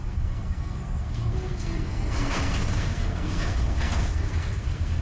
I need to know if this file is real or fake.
fake